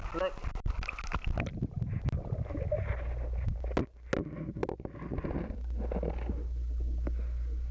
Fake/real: real